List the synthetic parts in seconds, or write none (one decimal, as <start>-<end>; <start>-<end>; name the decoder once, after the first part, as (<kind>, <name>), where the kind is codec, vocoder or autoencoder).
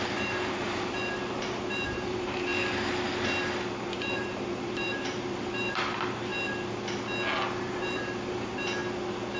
0.0-2.5 (vocoder, BigVGAN v2); 3.8-6.3; 7.6-8.8